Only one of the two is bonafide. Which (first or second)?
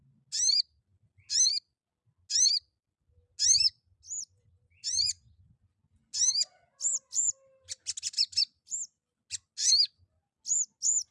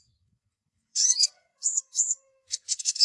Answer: first